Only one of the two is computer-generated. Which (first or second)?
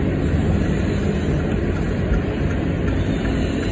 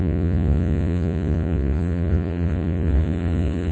second